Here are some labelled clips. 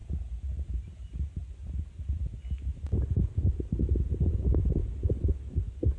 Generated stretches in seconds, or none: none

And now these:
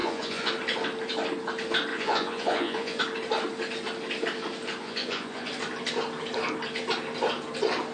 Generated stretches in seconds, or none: 0.0-0.5 (vocoder, Vocos); 1.9-3.0; 4.8-5.5

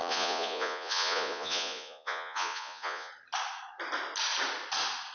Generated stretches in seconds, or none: 0.0-3.1 (vocoder, Vocos)

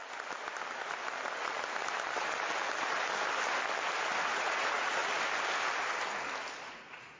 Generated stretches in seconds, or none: 4.3-5.0 (vocoder, Vocos); 6.5-7.2